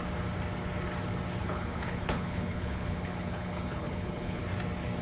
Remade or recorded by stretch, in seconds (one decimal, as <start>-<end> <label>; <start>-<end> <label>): 0.0-1.4 recorded; 1.4-4.4 remade; 4.4-5.0 recorded